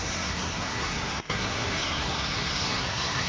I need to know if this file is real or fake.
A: fake